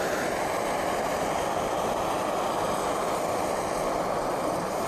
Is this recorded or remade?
recorded